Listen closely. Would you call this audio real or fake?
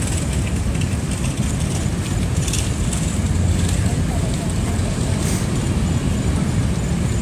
real